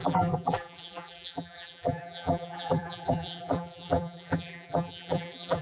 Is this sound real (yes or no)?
no